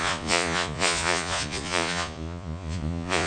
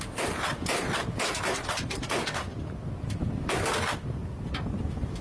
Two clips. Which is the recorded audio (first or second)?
second